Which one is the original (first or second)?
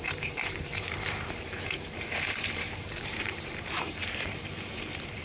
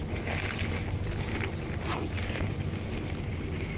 second